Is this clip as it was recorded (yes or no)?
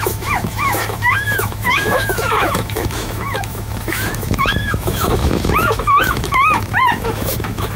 no